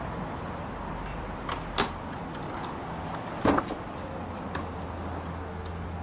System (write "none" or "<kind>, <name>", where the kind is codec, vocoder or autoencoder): none